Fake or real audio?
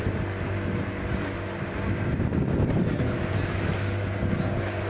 real